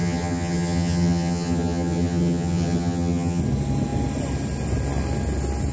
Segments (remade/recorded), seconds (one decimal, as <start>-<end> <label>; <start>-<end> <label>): 0.0-3.4 remade; 3.4-5.7 recorded